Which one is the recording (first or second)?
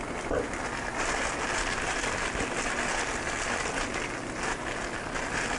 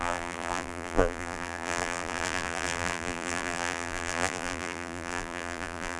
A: first